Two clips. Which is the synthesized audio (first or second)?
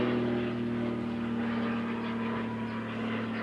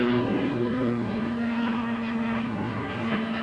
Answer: second